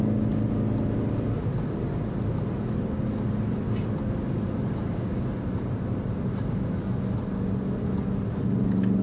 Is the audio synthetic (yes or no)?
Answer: no